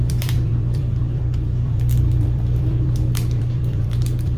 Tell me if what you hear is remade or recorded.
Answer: remade